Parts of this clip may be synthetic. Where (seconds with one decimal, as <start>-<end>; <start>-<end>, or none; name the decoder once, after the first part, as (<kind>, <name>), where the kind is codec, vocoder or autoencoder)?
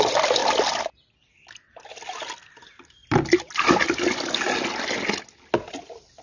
none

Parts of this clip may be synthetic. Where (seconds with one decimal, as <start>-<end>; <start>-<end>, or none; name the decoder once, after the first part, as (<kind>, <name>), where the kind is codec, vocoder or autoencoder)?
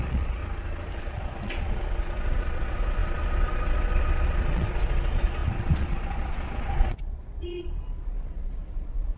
0.0-0.4 (vocoder, Vocos); 1.0-9.2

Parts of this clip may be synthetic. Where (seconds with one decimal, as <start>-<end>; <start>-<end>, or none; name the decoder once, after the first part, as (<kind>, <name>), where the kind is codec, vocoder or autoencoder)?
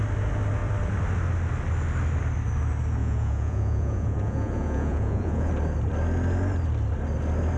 3.0-5.5 (vocoder, Vocos)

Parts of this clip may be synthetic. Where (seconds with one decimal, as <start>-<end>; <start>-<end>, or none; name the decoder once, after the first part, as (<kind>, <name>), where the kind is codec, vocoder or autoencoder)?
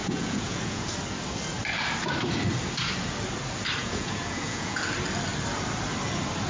0.0-0.9 (vocoder, Vocos); 3.8-4.8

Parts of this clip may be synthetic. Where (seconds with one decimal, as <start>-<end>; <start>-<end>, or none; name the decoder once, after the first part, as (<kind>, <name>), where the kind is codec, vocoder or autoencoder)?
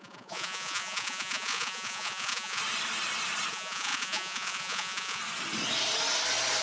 0.0-2.6 (vocoder, Vocos); 3.5-5.2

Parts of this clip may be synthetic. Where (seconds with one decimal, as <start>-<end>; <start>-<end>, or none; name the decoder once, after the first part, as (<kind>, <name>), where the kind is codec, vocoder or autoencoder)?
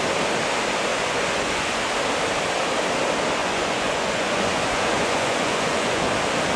0.9-1.8 (vocoder, Vocos); 3.4-6.1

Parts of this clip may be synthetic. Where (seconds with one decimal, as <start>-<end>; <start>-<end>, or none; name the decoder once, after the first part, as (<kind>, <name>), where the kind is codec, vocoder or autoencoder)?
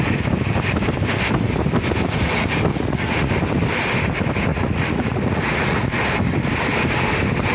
2.7-3.3 (vocoder, Vocos); 4.5-6.0